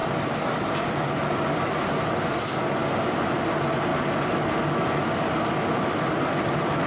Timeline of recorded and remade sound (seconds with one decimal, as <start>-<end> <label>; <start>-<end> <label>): 0.0-6.9 recorded